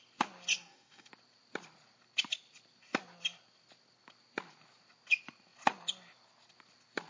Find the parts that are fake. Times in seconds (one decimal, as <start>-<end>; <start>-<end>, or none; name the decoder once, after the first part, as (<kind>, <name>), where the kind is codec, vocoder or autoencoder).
0.5-1.1 (codec, DAC)